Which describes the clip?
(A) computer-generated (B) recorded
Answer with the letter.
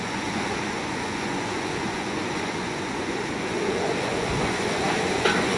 A